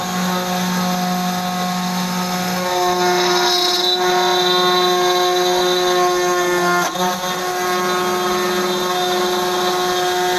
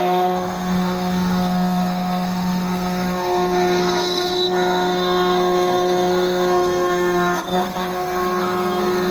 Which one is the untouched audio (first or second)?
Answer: first